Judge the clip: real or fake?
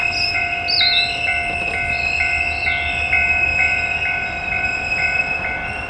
real